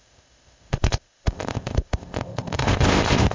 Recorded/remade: remade